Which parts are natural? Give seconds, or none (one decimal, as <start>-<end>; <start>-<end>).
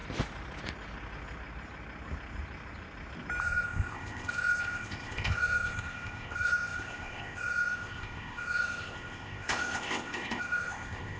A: 0.0-3.4